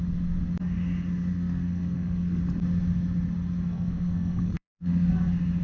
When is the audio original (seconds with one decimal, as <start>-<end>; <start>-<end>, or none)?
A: 0.0-1.3; 2.4-3.7; 5.1-5.6